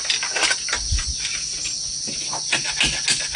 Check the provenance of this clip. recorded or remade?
recorded